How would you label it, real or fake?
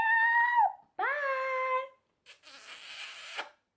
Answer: real